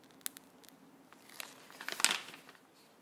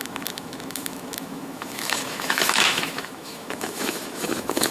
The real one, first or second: first